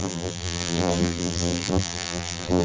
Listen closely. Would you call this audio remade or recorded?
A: remade